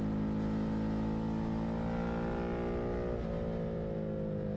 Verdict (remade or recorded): recorded